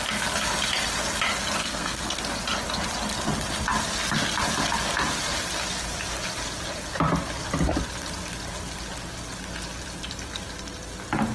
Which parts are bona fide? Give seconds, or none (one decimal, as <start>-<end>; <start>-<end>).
0.0-1.6; 2.2-11.3